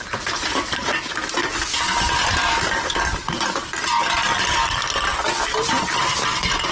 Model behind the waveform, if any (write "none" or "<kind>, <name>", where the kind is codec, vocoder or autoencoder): none